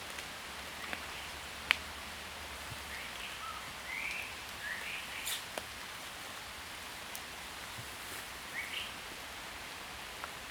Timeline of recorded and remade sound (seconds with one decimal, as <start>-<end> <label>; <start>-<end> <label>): 0.0-0.7 recorded; 0.7-2.8 remade; 2.8-10.5 recorded